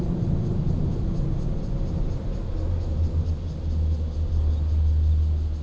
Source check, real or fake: real